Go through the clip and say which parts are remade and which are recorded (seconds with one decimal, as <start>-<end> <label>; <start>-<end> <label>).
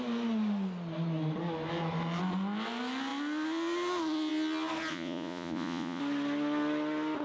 0.0-4.9 recorded; 4.9-6.0 remade; 6.0-7.2 recorded